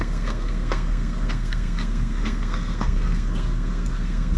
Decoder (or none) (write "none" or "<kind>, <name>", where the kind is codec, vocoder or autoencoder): codec, SNAC